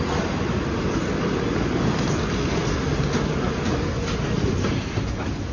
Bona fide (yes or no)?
yes